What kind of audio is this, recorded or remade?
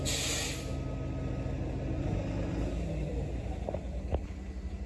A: recorded